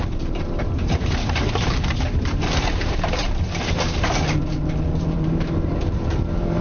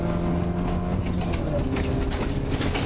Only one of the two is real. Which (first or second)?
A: second